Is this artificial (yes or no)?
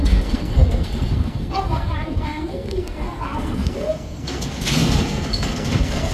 yes